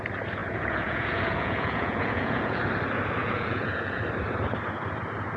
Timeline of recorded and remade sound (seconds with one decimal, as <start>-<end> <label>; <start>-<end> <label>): 0.0-0.4 recorded; 0.4-2.6 remade; 2.6-3.2 recorded; 3.2-4.0 remade; 4.0-5.4 recorded